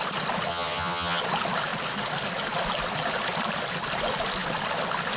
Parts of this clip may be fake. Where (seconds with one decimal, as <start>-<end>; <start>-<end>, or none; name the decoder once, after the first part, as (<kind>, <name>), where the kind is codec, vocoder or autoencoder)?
0.5-1.2 (vocoder, HiFi-GAN)